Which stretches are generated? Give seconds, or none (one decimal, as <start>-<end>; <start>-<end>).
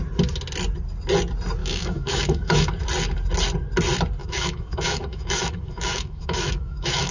1.6-2.7; 4.2-7.1